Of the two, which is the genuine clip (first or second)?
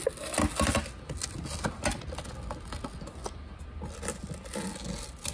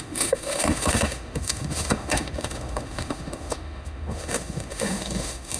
first